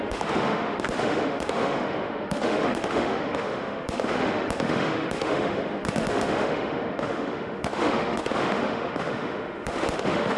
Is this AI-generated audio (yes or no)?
yes